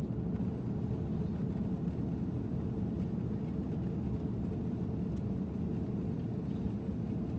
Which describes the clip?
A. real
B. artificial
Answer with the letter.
A